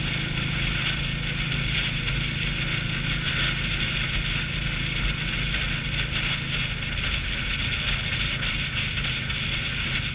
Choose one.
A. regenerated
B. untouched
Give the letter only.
B